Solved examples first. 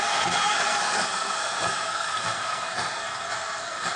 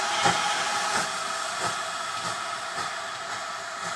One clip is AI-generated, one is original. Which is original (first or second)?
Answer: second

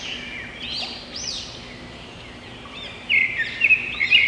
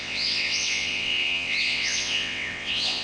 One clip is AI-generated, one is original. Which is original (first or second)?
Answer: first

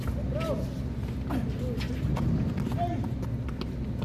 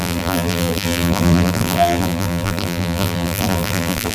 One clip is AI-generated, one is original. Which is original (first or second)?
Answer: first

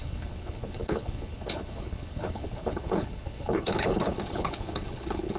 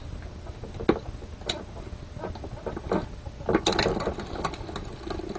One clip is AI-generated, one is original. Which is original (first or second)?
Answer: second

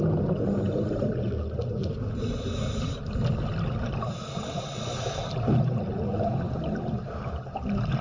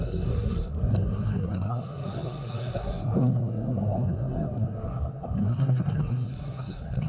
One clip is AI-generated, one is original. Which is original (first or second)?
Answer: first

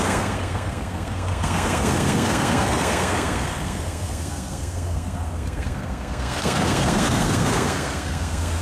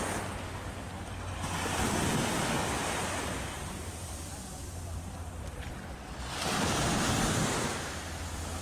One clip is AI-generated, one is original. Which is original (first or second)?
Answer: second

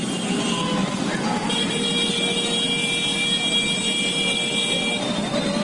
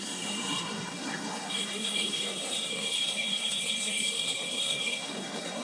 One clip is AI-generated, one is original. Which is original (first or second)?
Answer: first